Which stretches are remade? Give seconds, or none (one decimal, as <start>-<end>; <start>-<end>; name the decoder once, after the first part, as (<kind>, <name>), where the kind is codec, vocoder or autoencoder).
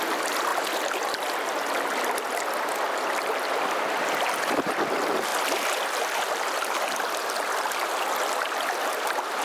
none